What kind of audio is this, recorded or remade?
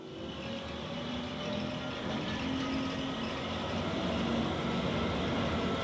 recorded